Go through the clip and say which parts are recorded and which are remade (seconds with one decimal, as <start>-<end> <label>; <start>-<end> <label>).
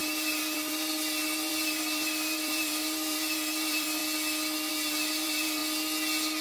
0.0-4.0 remade; 4.0-4.7 recorded; 4.7-5.6 remade; 5.6-6.4 recorded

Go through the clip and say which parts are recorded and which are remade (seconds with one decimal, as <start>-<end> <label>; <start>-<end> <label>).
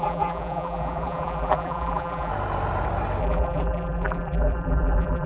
0.0-2.3 remade; 2.3-3.2 recorded; 3.2-5.3 remade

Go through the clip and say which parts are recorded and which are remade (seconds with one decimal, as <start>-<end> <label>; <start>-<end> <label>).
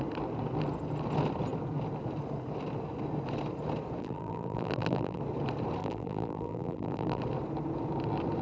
0.0-4.0 recorded; 4.0-5.2 remade; 5.2-5.8 recorded; 5.8-7.2 remade; 7.2-8.4 recorded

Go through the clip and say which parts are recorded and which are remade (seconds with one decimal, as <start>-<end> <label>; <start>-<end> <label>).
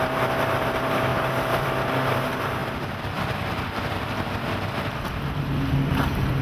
0.0-2.6 remade; 2.6-5.9 recorded; 5.9-6.4 remade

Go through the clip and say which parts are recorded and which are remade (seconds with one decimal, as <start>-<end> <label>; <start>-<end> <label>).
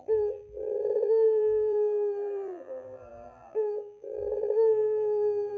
0.0-5.6 remade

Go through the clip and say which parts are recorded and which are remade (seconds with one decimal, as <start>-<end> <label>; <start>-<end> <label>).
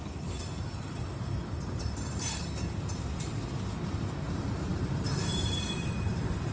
0.0-1.4 recorded; 1.4-2.4 remade; 2.4-4.7 recorded; 4.7-6.5 remade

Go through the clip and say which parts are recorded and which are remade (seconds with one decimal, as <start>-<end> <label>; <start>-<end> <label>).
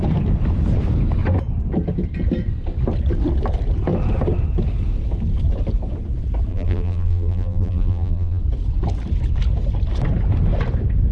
0.0-6.5 recorded; 6.5-8.4 remade; 8.4-11.1 recorded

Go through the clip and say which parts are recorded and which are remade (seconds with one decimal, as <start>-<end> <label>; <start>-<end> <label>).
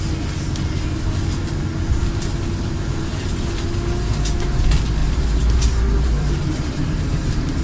0.0-5.0 recorded; 5.0-7.6 remade